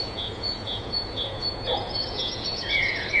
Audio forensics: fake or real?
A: fake